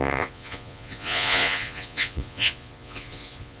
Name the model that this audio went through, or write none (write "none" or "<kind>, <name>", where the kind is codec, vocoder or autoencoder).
vocoder, Vocos